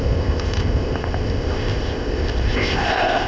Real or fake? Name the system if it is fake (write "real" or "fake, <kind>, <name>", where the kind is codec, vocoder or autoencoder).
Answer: fake, codec, ZipCodec